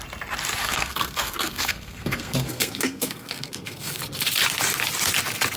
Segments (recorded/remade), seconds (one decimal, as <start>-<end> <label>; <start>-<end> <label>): 0.0-0.6 recorded; 0.6-4.0 remade; 4.0-5.6 recorded